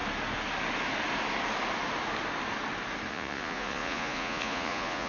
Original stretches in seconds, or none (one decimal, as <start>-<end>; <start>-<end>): 0.0-3.1